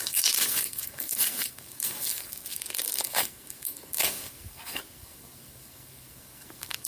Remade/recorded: remade